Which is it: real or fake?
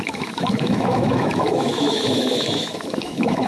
fake